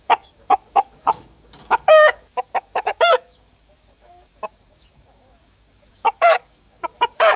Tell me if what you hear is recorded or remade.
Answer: remade